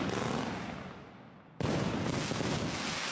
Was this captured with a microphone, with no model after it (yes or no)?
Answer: yes